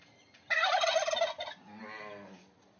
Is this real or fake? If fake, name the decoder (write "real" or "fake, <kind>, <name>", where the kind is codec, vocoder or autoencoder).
real